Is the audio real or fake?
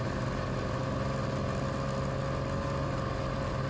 real